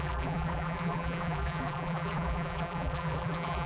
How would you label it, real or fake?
fake